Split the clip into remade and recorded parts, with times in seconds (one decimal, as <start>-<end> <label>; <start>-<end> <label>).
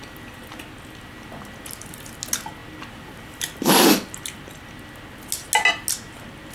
0.0-6.5 recorded